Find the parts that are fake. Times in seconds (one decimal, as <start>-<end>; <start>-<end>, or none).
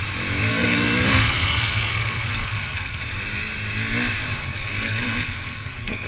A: 0.5-3.0; 4.4-6.1